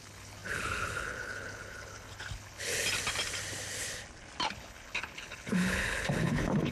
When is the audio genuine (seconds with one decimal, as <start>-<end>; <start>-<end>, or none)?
2.7-4.5